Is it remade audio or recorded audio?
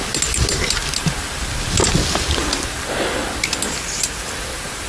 recorded